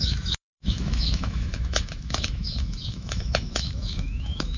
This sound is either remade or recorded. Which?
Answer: remade